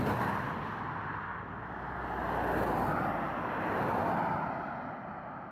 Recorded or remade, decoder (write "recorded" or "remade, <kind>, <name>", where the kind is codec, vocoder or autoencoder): recorded